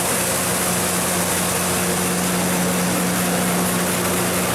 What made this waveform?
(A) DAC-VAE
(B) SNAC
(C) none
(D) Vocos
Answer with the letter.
C